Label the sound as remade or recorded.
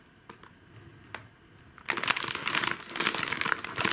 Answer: recorded